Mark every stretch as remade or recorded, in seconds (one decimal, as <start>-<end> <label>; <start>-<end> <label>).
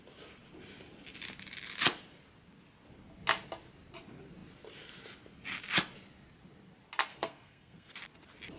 0.0-7.1 recorded; 7.1-7.9 remade; 7.9-8.6 recorded